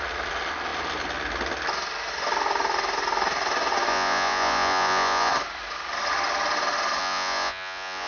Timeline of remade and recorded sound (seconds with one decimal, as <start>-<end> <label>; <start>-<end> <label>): 0.0-3.9 recorded; 3.9-5.3 remade; 5.3-7.0 recorded; 7.0-8.1 remade